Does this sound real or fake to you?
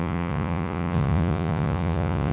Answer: fake